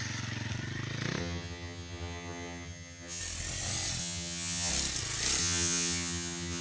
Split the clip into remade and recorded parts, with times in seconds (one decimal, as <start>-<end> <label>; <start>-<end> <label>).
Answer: 0.0-1.2 recorded; 1.2-3.2 remade; 3.2-4.0 recorded; 4.0-4.7 remade; 4.7-5.4 recorded; 5.4-6.6 remade